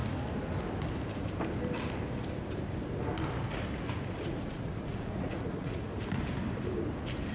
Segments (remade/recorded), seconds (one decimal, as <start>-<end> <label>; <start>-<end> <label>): 0.0-4.3 recorded; 4.3-5.9 remade; 5.9-7.3 recorded